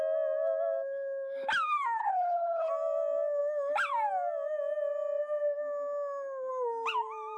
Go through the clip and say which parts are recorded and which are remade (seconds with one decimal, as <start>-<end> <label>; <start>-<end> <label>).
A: 0.0-2.0 recorded; 2.0-2.7 remade; 2.7-7.4 recorded